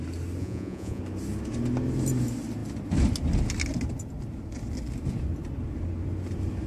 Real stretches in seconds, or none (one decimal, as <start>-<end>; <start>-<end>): 0.0-0.4; 1.0-6.7